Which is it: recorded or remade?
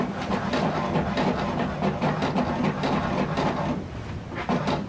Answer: recorded